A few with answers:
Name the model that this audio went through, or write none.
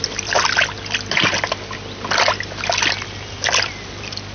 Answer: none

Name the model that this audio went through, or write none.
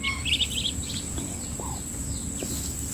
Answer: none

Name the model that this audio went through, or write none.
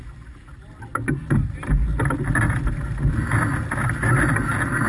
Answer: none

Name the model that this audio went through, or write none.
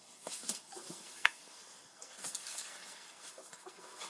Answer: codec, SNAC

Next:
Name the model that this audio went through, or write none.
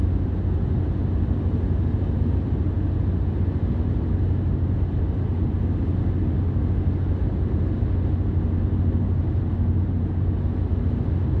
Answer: none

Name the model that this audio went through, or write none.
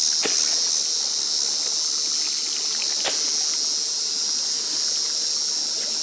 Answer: none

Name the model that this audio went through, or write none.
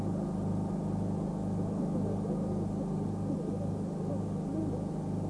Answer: none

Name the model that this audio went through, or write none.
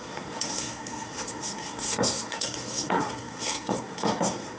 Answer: codec, SNAC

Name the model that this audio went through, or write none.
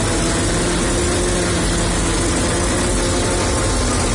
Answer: none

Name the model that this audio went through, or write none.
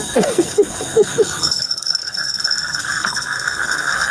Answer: codec, SNAC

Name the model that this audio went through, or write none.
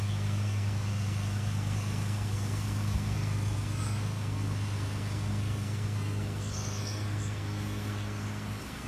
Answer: codec, SNAC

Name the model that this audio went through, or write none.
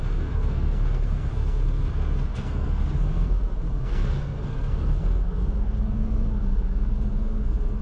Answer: codec, SNAC